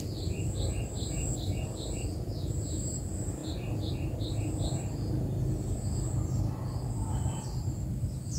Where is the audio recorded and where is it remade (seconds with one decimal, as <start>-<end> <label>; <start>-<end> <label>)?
0.0-8.4 recorded